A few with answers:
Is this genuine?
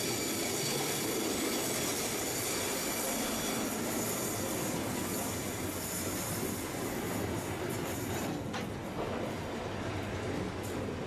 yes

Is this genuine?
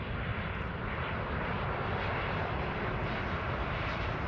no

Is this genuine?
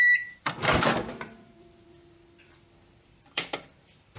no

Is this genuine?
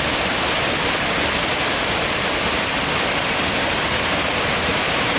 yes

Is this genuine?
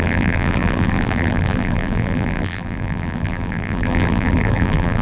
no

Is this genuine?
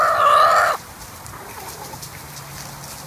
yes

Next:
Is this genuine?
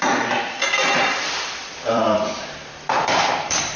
no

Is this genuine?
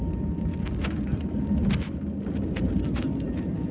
yes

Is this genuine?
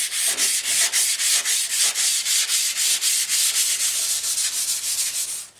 yes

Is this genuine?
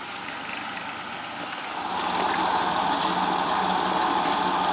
yes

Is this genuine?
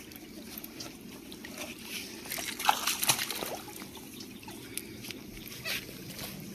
yes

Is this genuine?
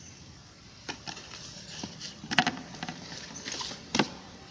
no